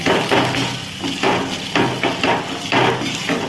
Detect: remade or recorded recorded